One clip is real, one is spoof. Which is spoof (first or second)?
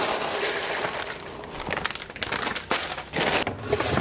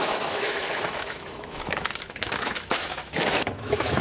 second